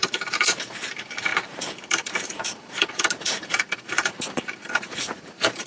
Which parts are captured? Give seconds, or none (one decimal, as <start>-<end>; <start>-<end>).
none